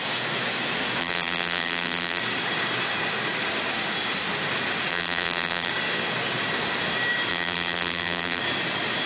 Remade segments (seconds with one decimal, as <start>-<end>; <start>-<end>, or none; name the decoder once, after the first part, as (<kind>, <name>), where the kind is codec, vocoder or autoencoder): 1.0-2.2 (vocoder, BigVGAN v2); 4.9-5.7; 7.3-8.4